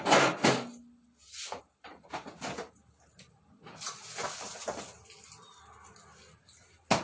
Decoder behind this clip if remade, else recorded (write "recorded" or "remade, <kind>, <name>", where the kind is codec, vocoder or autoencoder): recorded